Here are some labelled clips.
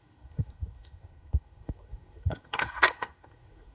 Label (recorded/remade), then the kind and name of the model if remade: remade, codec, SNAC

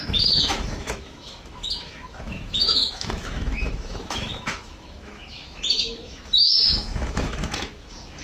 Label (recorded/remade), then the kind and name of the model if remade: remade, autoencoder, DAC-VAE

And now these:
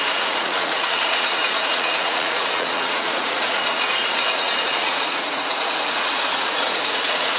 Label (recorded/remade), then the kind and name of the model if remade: remade, vocoder, Vocos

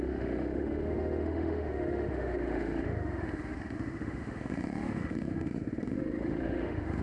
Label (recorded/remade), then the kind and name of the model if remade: remade, autoencoder, DAC-VAE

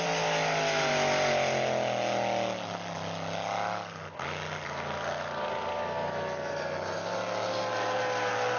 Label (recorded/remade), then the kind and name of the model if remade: recorded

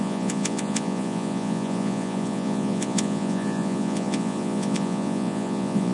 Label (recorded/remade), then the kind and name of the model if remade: remade, vocoder, Vocos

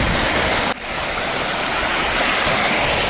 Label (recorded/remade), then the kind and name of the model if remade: recorded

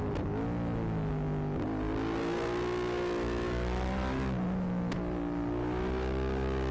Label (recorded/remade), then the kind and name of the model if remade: recorded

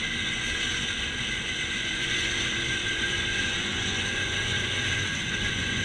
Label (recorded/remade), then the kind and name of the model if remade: remade, vocoder, Vocos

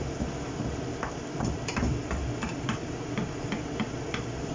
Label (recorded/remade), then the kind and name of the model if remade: remade, vocoder, BigVGAN v2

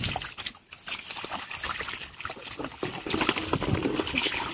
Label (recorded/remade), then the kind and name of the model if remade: recorded